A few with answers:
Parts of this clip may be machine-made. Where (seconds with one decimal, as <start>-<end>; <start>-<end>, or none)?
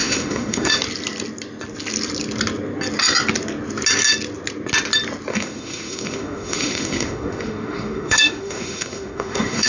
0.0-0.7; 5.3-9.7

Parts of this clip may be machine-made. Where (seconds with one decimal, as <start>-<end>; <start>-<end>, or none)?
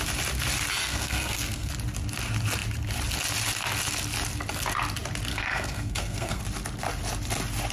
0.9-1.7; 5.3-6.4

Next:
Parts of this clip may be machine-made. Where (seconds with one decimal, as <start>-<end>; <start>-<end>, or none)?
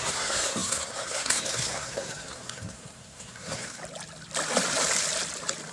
0.0-3.8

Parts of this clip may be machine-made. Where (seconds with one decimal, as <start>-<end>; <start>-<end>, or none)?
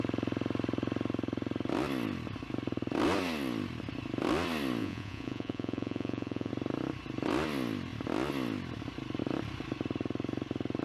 4.8-6.5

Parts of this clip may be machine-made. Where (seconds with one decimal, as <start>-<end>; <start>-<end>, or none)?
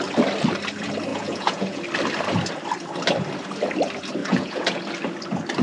1.1-1.8; 4.2-4.8